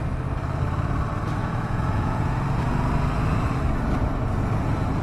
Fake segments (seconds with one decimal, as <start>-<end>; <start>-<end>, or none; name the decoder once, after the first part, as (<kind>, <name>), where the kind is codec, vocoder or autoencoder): 1.4-2.3 (vocoder, Vocos)